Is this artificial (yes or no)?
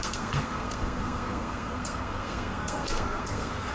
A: yes